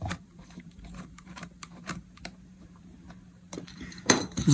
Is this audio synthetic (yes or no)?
yes